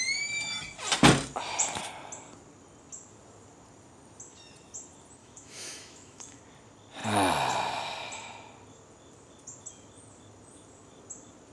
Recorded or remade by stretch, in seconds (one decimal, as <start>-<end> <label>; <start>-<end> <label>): 0.0-5.2 recorded; 5.2-6.4 remade; 6.4-11.5 recorded